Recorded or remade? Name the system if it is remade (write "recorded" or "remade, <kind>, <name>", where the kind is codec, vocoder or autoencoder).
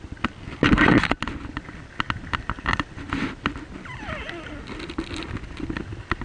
recorded